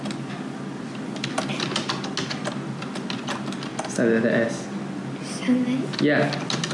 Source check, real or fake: real